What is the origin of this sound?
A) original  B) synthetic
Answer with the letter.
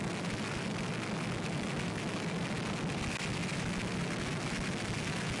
A